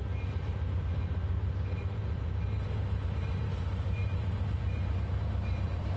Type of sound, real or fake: fake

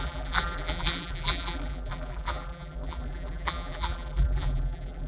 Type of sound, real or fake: fake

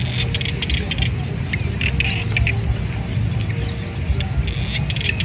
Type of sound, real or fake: real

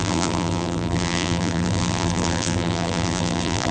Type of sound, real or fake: fake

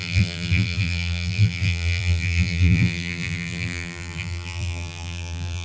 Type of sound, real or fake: fake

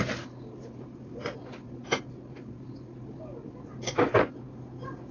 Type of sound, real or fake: real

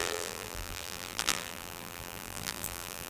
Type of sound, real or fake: fake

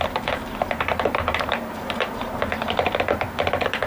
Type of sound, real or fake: fake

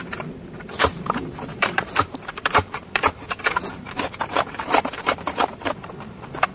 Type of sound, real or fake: fake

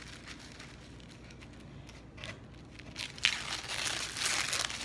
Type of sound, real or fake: real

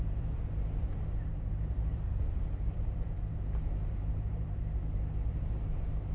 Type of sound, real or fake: fake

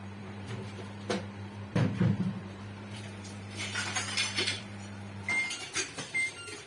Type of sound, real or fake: fake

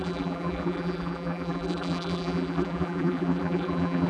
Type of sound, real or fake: fake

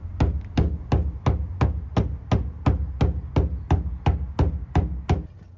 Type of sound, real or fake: real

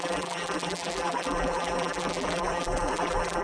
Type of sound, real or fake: fake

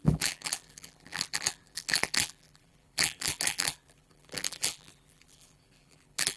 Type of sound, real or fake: fake